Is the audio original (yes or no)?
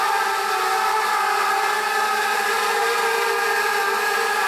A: yes